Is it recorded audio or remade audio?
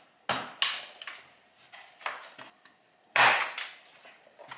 recorded